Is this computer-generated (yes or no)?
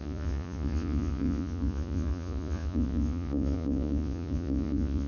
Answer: yes